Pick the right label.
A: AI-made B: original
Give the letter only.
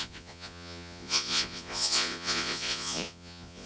A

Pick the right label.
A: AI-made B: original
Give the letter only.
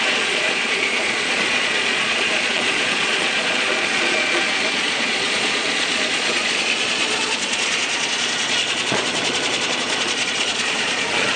A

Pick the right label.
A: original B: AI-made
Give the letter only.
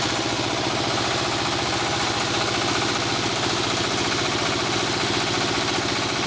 A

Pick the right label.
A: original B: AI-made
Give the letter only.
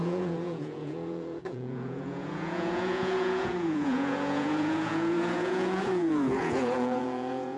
B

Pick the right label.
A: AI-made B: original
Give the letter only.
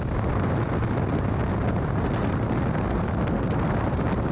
B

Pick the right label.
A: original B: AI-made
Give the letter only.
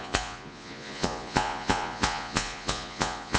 B